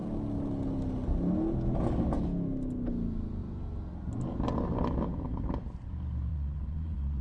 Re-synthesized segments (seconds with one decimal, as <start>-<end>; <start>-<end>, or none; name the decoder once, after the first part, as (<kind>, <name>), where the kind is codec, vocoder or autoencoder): 6.3-7.2 (vocoder, Vocos)